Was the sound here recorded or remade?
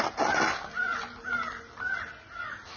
recorded